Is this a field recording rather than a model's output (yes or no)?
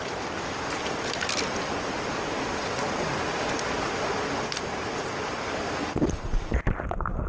yes